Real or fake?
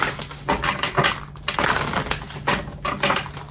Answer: real